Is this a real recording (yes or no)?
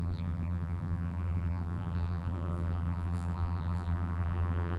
no